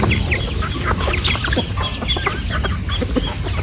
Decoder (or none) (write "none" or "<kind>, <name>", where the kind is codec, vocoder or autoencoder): none